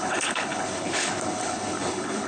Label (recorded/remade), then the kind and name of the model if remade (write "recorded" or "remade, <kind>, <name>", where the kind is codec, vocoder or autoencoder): remade, codec, HILCodec